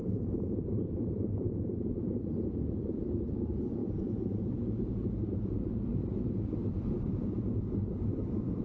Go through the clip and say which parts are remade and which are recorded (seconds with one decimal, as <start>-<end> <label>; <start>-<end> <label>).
0.0-8.6 remade